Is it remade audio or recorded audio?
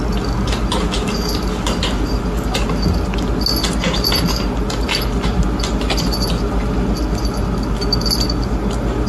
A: recorded